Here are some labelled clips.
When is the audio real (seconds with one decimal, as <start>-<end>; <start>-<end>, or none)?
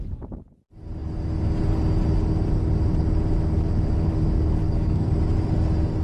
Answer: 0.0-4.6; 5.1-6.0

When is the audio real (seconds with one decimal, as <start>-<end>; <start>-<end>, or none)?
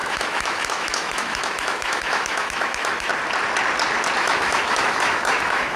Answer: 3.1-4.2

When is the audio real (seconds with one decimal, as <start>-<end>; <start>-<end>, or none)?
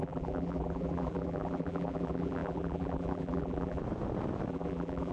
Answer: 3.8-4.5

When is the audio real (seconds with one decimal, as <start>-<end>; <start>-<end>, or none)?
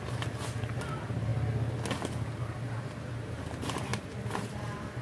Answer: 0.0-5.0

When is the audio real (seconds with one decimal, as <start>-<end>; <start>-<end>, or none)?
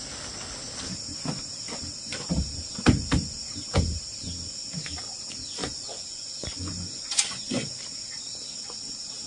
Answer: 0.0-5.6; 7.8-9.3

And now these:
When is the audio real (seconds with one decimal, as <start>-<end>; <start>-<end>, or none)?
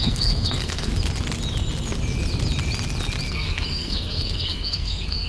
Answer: 0.9-3.3